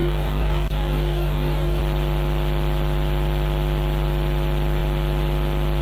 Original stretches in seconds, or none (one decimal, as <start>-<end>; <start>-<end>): 1.8-5.8